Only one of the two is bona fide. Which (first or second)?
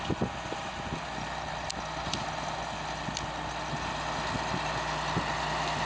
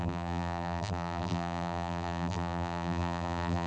first